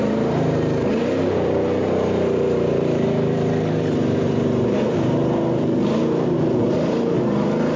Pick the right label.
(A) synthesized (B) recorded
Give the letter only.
A